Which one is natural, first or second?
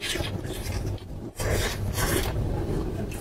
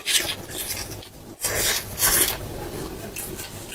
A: second